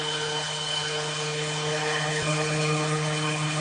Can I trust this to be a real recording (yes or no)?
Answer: no